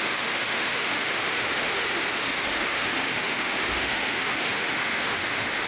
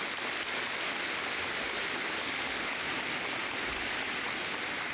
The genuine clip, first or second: second